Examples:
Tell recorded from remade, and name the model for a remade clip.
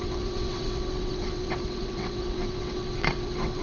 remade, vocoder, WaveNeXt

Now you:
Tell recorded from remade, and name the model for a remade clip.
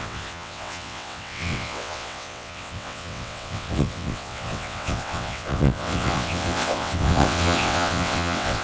remade, vocoder, WaveNeXt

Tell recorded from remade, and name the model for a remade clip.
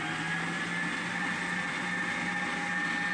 recorded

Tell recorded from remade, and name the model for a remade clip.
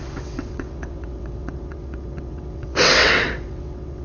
remade, vocoder, WaveNeXt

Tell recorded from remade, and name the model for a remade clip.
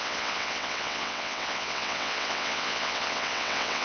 remade, vocoder, WaveNeXt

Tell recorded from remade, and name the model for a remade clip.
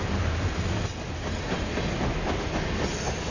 recorded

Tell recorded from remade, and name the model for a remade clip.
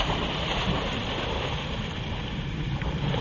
recorded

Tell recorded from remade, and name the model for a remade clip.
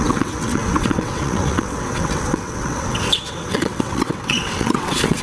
remade, vocoder, WaveNeXt